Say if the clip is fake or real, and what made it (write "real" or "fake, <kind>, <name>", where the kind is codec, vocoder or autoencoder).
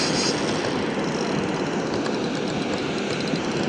real